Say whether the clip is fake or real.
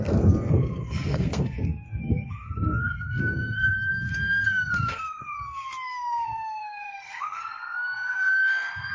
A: fake